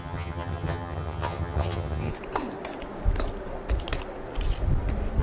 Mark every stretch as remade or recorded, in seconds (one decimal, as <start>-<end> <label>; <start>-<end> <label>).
0.0-2.1 remade; 2.1-5.2 recorded